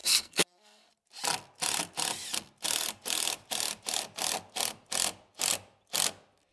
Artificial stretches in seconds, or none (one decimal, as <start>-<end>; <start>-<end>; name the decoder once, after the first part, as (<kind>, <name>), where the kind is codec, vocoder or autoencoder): 0.0-0.9 (codec, SNAC)